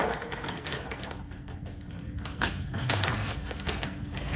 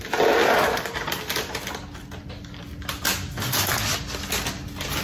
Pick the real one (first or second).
second